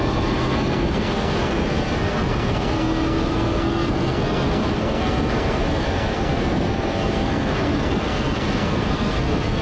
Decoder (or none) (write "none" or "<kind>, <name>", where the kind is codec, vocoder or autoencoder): codec, SNAC